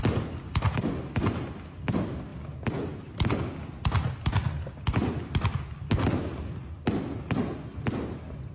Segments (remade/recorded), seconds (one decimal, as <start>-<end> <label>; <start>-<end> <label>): 0.0-8.5 recorded